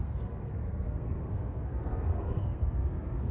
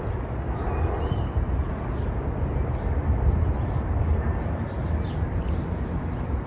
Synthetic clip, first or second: first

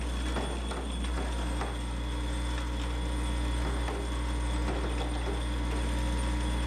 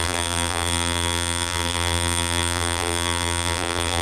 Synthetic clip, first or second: second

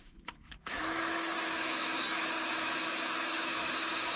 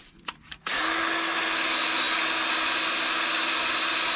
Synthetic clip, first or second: first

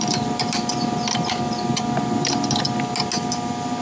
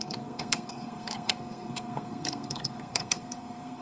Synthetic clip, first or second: second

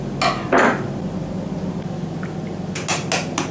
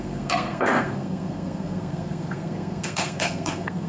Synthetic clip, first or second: second